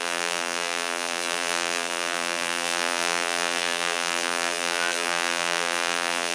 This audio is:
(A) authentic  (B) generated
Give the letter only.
B